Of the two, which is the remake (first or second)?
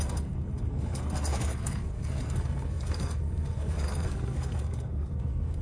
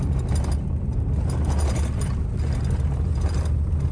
first